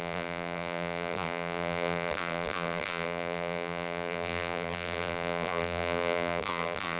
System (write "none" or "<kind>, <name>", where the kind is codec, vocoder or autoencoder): vocoder, BigVGAN v2